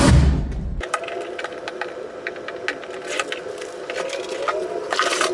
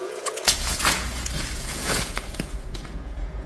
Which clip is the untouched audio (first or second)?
first